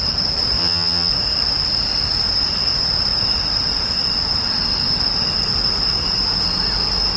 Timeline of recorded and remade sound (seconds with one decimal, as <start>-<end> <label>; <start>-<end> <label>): 0.0-0.6 recorded; 0.6-1.1 remade; 1.1-7.2 recorded